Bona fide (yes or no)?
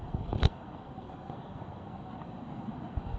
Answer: no